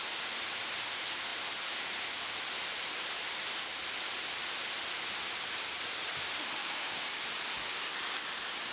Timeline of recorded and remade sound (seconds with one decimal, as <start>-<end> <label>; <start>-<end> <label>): 0.0-6.6 recorded; 6.6-7.2 remade; 7.2-8.7 recorded